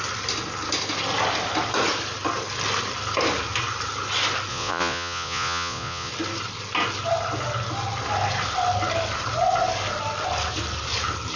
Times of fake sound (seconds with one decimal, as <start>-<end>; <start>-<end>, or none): 4.5-6.1